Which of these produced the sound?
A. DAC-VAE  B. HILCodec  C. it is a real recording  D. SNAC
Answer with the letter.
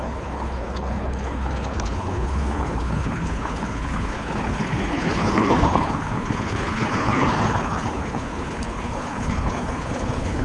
B